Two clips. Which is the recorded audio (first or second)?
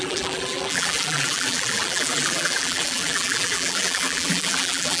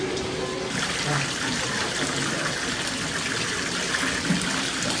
second